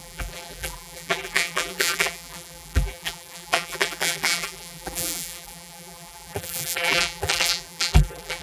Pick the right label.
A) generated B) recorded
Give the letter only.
A